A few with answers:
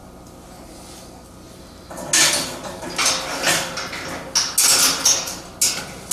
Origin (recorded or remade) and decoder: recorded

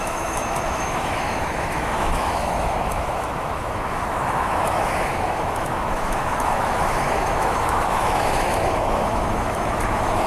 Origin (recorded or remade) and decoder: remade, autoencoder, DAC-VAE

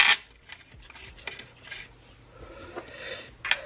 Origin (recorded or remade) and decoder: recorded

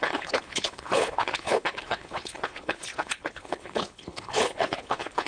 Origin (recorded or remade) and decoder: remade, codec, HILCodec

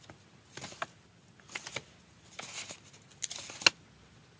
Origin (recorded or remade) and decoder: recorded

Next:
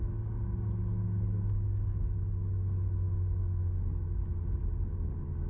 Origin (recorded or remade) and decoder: recorded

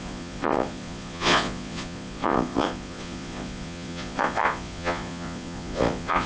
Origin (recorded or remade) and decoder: remade, vocoder, Vocos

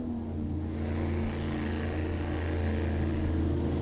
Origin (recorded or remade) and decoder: recorded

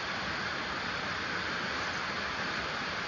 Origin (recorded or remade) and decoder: recorded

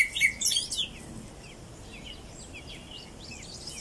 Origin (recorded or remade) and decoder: recorded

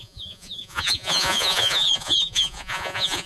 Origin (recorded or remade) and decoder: remade, vocoder, Vocos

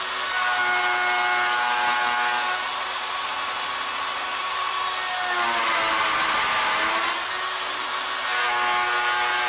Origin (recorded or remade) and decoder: recorded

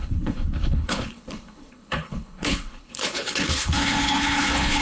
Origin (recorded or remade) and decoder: remade, codec, HILCodec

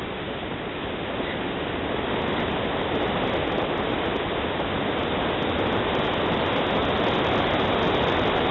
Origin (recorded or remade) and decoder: recorded